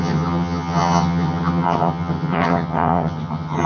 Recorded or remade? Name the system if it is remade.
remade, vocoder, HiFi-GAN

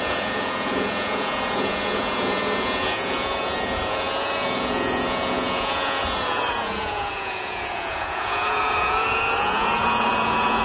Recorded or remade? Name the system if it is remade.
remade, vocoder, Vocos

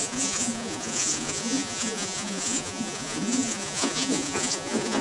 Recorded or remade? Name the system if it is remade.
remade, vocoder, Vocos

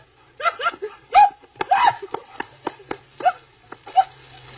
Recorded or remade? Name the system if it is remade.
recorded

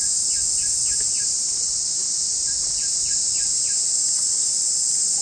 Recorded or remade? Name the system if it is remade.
recorded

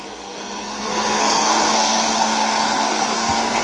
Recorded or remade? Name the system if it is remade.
remade, codec, SNAC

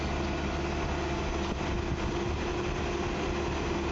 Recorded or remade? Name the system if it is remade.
recorded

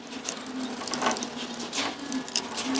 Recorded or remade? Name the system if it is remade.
recorded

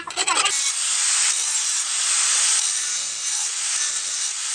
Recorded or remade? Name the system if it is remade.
recorded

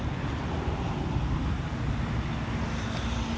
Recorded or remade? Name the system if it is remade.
recorded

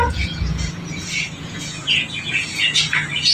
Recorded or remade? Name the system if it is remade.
remade, vocoder, Vocos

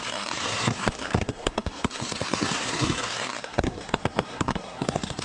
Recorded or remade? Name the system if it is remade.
remade, codec, SNAC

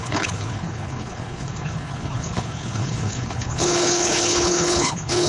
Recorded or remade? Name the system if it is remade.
remade, codec, HILCodec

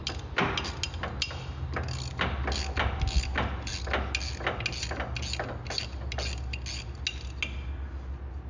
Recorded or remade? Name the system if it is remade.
recorded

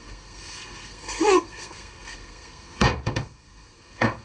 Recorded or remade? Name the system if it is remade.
remade, codec, SNAC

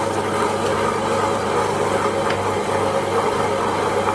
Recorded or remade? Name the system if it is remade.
recorded